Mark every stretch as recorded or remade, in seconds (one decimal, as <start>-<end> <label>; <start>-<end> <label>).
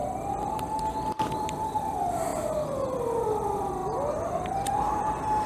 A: 0.0-0.8 recorded; 0.8-2.3 remade; 2.3-3.0 recorded; 3.0-3.8 remade; 3.8-4.4 recorded; 4.4-5.5 remade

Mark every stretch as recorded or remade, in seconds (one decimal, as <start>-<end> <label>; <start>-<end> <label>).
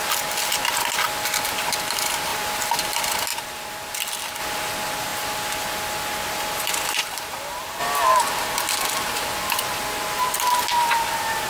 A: 0.0-7.0 recorded; 7.0-7.8 remade; 7.8-11.5 recorded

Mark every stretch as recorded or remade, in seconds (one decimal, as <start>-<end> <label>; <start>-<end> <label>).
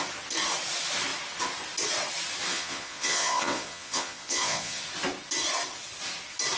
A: 0.0-2.5 recorded; 2.5-4.8 remade; 4.8-6.6 recorded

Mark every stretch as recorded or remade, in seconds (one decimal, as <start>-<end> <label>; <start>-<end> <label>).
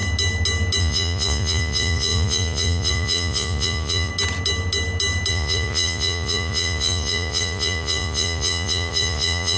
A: 0.0-0.8 recorded; 0.8-4.1 remade; 4.1-5.3 recorded; 5.3-9.6 remade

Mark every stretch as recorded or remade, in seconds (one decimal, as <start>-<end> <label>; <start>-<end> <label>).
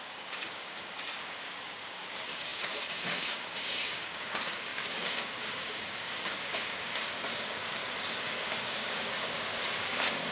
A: 0.0-7.8 remade; 7.8-8.3 recorded; 8.3-10.3 remade